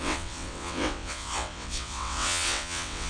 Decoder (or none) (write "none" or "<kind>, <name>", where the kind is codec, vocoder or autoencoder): vocoder, WaveNeXt